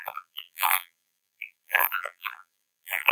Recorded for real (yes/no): no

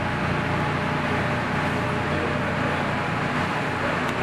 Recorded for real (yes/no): yes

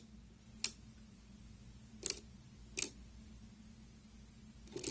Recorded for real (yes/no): yes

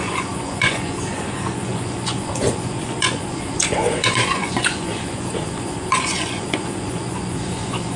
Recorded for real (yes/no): no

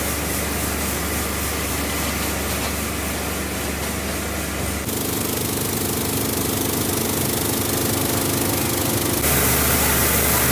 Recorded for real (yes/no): yes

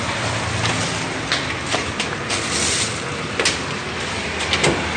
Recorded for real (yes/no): yes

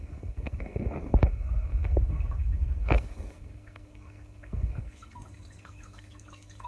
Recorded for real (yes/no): no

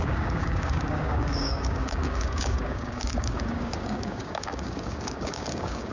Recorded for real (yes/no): no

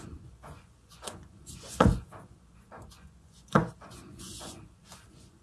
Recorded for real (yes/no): no